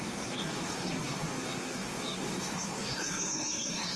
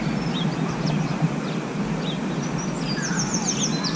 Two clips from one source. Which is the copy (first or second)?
first